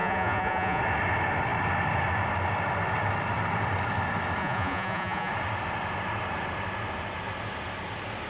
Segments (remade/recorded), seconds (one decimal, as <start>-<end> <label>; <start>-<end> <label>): 0.0-0.8 remade; 0.8-4.4 recorded; 4.4-5.3 remade; 5.3-8.3 recorded

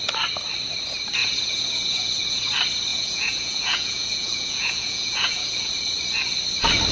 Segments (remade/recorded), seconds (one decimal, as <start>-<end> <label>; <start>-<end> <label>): 0.0-1.2 recorded; 1.2-2.5 remade; 2.5-2.9 recorded; 2.9-5.7 remade; 5.7-6.9 recorded